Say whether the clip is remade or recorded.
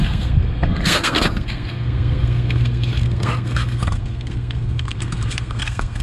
remade